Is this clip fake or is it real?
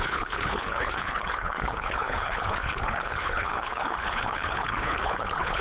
fake